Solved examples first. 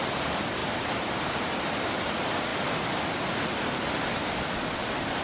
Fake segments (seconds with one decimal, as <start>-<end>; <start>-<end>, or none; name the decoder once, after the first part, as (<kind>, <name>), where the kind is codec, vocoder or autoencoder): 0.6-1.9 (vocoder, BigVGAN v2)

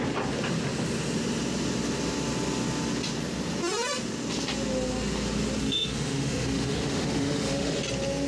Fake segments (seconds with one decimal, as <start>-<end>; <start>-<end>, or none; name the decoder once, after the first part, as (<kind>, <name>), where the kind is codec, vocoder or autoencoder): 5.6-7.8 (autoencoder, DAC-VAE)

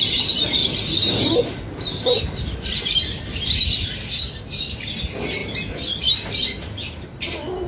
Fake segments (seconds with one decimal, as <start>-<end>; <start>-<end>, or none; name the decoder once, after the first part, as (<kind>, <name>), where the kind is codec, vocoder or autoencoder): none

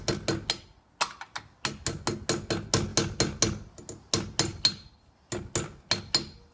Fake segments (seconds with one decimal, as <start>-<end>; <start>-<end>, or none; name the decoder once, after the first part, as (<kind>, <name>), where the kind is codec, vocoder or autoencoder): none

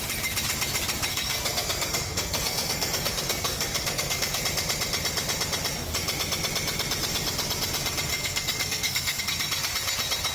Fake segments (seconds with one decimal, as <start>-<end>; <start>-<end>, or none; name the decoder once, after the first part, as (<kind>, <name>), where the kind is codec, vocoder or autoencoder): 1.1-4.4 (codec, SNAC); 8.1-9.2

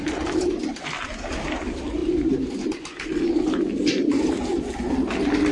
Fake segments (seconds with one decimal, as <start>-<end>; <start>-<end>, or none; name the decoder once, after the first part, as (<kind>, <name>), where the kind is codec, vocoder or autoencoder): 0.0-5.5 (vocoder, BigVGAN v2)

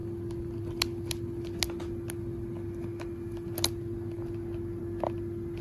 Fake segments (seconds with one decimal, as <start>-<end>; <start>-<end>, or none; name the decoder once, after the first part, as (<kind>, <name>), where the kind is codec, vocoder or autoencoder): none